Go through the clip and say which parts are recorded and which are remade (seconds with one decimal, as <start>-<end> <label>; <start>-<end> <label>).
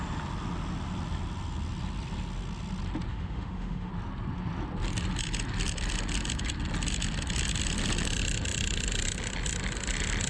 0.0-3.1 recorded; 3.1-3.9 remade; 3.9-10.3 recorded